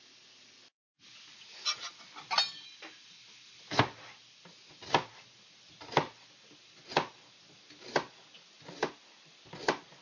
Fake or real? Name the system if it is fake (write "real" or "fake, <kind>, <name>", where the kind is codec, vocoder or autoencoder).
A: real